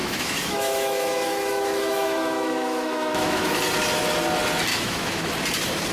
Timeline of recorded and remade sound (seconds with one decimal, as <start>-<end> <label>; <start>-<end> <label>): 0.0-3.5 remade; 3.5-4.7 recorded; 4.7-5.3 remade; 5.3-5.9 recorded